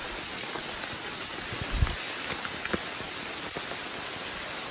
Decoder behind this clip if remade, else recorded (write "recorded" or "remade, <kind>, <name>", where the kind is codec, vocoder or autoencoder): recorded